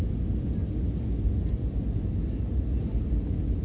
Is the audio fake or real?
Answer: real